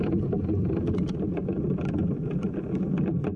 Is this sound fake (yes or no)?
yes